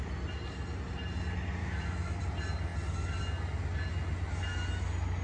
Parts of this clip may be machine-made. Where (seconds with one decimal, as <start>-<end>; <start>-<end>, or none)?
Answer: 1.6-2.2